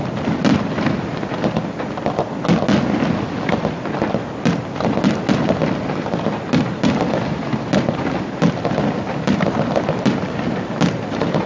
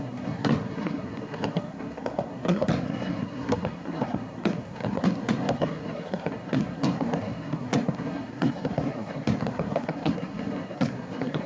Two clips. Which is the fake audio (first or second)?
second